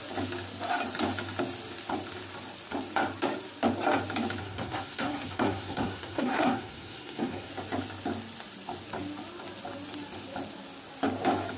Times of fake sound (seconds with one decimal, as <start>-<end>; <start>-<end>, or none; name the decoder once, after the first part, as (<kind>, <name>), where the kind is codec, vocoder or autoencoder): 4.4-7.5 (codec, SNAC)